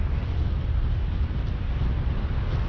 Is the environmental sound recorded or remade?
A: recorded